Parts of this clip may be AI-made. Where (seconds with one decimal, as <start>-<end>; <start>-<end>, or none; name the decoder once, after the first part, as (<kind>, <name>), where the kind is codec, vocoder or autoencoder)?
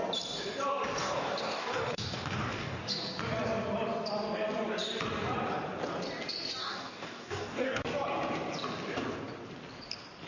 1.0-3.0 (codec, DAC); 6.6-7.8